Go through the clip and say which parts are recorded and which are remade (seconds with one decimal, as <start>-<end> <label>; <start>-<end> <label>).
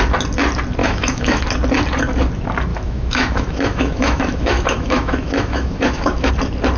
0.0-0.8 recorded; 0.8-1.4 remade; 1.4-2.7 recorded; 2.7-6.3 remade; 6.3-6.8 recorded